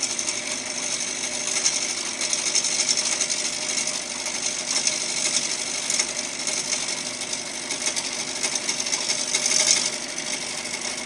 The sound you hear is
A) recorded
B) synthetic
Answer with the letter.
A